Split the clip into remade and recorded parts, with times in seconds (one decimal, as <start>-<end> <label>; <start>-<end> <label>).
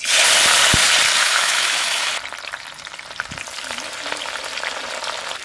0.0-1.2 recorded; 1.2-2.1 remade; 2.1-5.4 recorded